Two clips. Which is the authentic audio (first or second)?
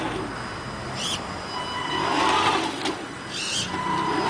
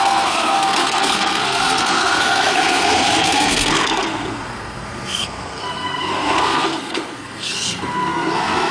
first